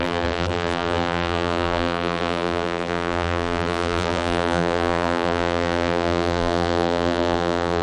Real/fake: fake